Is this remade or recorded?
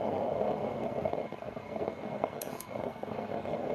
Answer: remade